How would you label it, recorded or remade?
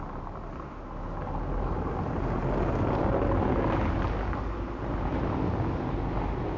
recorded